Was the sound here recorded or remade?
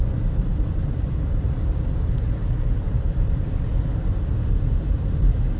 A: remade